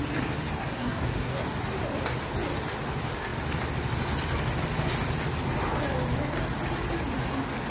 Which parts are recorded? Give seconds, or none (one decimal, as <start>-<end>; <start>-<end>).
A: 0.0-0.6; 1.4-7.7